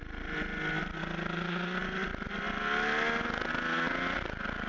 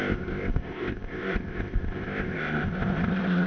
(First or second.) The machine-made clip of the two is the second